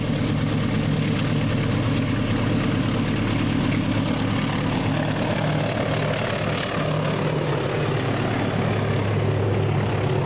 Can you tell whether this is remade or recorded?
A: recorded